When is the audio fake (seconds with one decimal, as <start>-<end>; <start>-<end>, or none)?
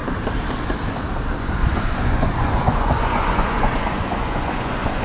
1.4-5.0